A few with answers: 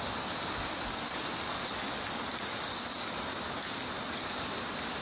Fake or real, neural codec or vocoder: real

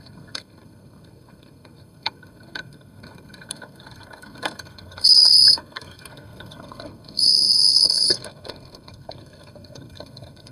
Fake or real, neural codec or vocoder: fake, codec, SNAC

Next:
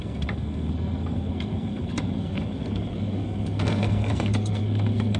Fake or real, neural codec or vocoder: fake, codec, SNAC